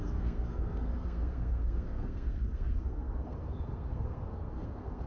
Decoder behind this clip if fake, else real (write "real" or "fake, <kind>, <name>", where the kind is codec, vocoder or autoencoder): fake, codec, SNAC